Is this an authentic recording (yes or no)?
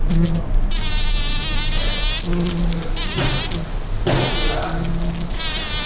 yes